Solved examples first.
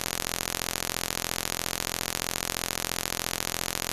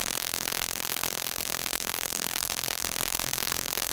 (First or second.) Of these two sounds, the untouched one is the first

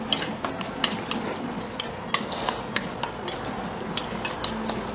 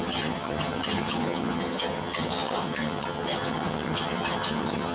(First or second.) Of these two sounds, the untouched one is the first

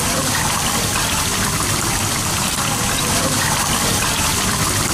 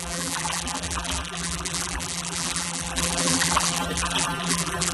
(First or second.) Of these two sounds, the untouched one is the first